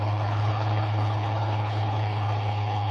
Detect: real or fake fake